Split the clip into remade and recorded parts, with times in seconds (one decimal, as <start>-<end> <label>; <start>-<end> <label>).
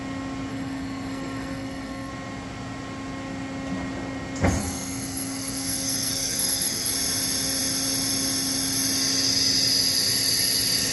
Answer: 0.0-0.5 recorded; 0.5-2.1 remade; 2.1-4.6 recorded; 4.6-6.9 remade; 6.9-10.9 recorded